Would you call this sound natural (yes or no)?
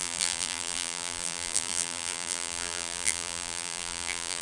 no